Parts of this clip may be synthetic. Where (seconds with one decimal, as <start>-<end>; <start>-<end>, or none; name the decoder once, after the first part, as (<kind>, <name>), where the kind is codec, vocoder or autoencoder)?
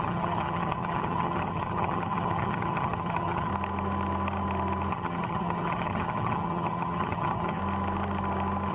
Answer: 0.0-3.5 (vocoder, HiFi-GAN); 4.9-7.6